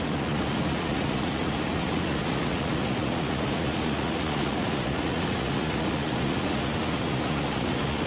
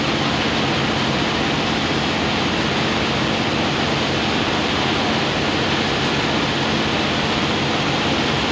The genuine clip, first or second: second